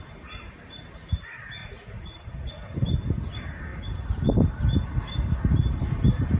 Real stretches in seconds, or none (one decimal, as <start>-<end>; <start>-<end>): 0.0-1.6; 2.5-6.4